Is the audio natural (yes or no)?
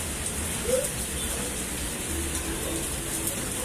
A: yes